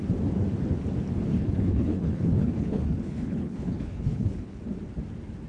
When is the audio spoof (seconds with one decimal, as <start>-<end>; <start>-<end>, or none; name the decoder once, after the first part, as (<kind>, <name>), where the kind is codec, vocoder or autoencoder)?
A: 1.3-4.6 (codec, HILCodec)